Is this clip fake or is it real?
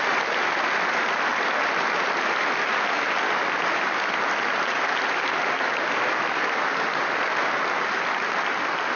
real